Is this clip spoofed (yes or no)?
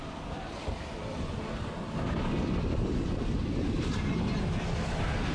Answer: no